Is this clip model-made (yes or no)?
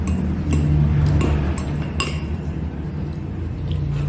no